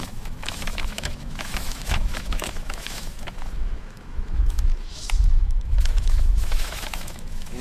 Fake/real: fake